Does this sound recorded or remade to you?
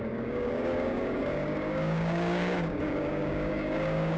remade